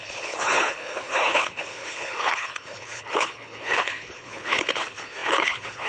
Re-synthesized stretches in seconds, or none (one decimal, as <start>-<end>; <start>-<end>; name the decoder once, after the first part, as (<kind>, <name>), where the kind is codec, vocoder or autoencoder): 0.0-5.9 (codec, HILCodec)